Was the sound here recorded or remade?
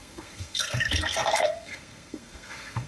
remade